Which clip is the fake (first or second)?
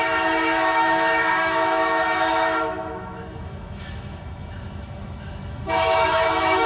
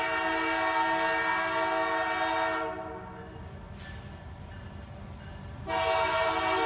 first